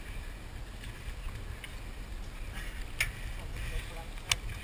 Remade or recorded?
recorded